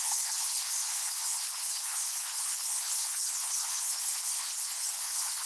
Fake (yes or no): yes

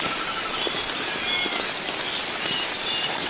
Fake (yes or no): no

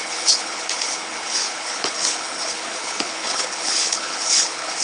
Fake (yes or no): yes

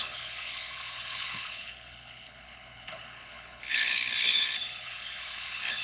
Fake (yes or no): yes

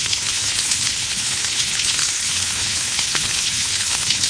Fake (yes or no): yes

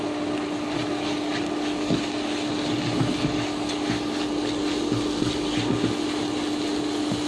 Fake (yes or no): no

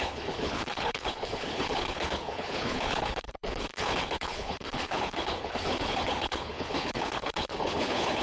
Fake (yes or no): yes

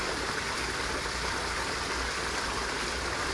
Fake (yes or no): no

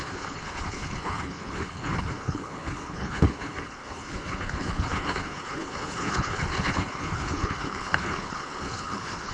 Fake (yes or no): yes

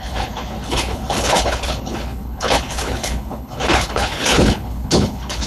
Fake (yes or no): yes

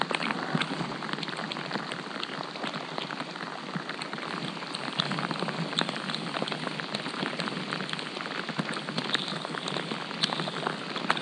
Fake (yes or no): no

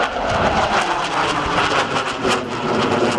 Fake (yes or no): no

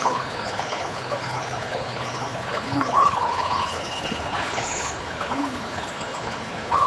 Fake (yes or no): yes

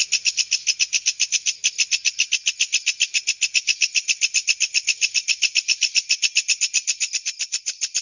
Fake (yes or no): no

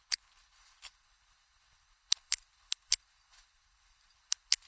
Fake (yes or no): yes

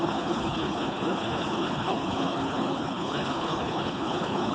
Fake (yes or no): yes